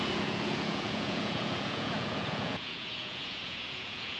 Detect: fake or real fake